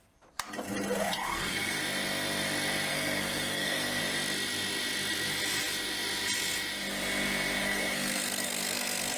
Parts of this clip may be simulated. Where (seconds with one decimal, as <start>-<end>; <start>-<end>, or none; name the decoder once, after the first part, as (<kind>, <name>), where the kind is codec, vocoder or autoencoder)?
1.2-1.8 (codec, SNAC); 2.9-4.0; 7.6-9.2